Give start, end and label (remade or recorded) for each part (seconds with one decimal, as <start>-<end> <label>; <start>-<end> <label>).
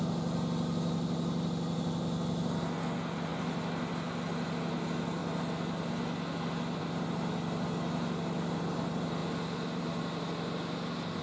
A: 0.0-11.2 recorded